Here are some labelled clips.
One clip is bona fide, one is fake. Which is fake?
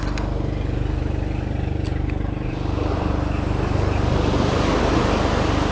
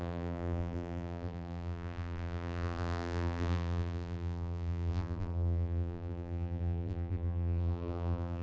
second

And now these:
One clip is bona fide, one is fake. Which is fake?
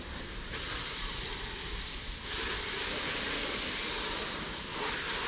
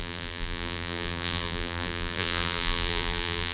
second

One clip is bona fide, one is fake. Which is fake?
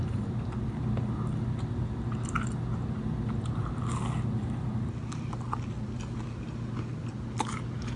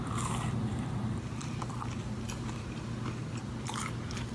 second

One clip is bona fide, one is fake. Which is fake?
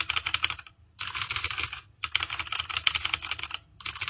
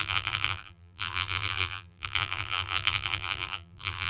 second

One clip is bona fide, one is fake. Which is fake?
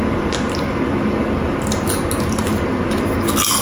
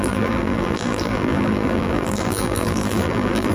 second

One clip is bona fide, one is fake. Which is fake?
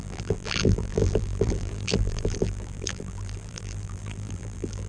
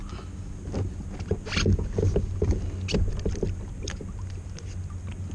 first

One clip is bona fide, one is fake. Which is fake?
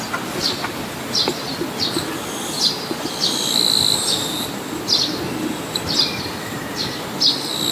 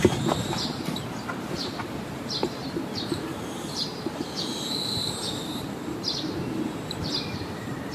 second